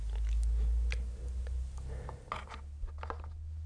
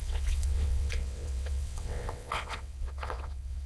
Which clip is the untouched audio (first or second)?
first